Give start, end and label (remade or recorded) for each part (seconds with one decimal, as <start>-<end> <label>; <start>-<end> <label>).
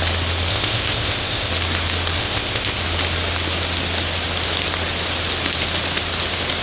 0.0-0.5 recorded; 0.5-1.5 remade; 1.5-2.2 recorded; 2.2-2.8 remade; 2.8-6.6 recorded